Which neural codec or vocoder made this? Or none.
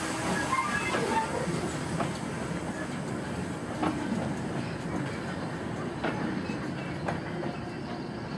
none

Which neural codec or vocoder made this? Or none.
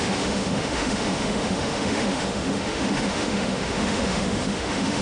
autoencoder, DAC-VAE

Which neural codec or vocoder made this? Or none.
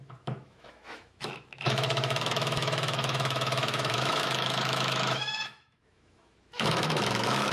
autoencoder, DAC-VAE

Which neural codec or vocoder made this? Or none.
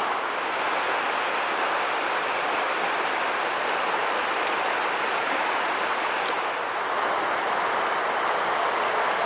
none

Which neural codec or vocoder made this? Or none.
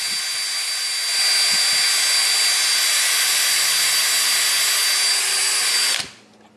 none